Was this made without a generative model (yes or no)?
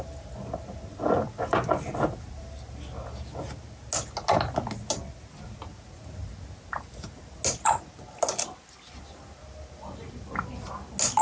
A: yes